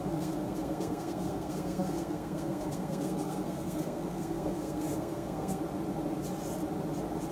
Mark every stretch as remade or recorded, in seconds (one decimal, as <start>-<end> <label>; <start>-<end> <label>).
0.0-5.6 remade; 5.6-7.3 recorded